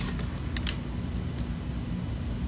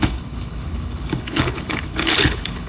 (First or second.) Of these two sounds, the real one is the first